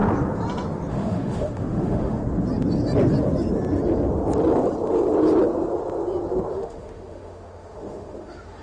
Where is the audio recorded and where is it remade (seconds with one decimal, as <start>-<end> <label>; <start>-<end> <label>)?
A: 0.0-0.9 recorded; 0.9-2.2 remade; 2.2-6.5 recorded; 6.5-8.6 remade